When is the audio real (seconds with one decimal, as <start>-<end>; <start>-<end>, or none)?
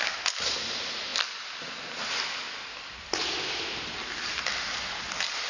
0.0-5.5